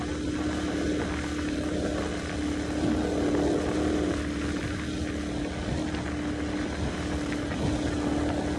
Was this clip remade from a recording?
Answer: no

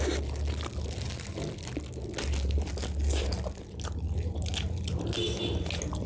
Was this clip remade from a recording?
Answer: no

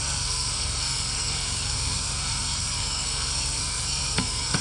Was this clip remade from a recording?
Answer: yes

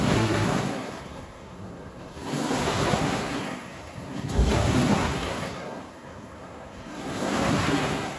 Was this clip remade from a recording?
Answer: yes